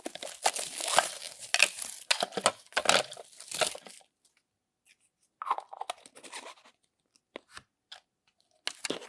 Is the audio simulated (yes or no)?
no